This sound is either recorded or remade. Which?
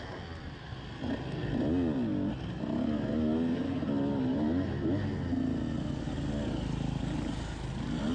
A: recorded